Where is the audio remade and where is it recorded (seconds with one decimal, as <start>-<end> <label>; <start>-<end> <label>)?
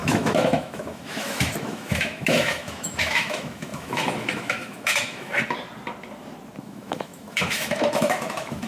0.0-5.3 remade; 5.3-6.6 recorded; 6.6-8.7 remade